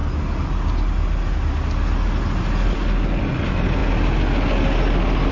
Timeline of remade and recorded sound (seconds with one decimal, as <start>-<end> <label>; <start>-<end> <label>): 0.0-5.3 recorded

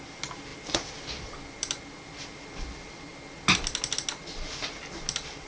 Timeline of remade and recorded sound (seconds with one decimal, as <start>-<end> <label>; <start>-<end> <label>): 0.0-5.5 recorded

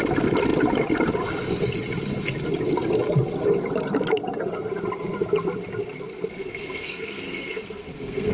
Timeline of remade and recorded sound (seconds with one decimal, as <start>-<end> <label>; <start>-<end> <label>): 0.0-6.3 recorded; 6.3-8.3 remade

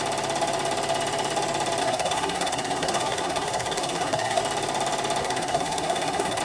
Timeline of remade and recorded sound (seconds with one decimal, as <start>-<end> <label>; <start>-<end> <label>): 0.0-1.8 recorded; 1.8-4.4 remade; 4.4-5.2 recorded; 5.2-6.4 remade

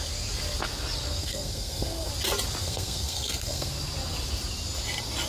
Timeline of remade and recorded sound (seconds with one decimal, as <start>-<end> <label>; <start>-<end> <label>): 0.0-1.2 recorded; 1.2-2.1 remade; 2.1-2.6 recorded; 2.6-3.7 remade; 3.7-5.3 recorded

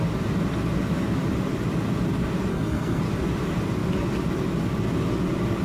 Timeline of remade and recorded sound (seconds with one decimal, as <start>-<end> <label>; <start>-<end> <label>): 0.0-2.5 recorded; 2.5-3.0 remade; 3.0-5.6 recorded